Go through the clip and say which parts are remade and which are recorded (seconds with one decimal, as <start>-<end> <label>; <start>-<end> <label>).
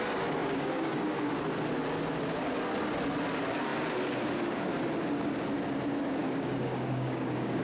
0.0-0.4 recorded; 0.4-1.4 remade; 1.4-6.2 recorded; 6.2-7.6 remade